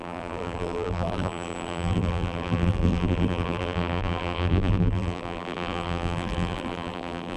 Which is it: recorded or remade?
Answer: remade